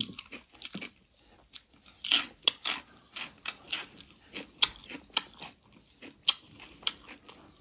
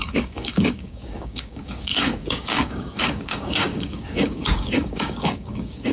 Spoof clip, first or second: second